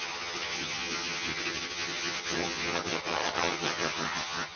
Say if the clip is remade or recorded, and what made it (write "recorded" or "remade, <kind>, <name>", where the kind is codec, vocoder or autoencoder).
remade, vocoder, HiFi-GAN